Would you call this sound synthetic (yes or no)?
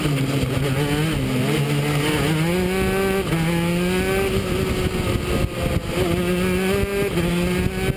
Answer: no